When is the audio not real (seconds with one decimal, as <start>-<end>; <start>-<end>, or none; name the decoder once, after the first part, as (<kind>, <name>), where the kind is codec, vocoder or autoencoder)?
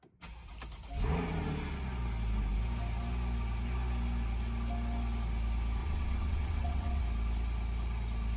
5.8-7.0 (vocoder, WaveNeXt)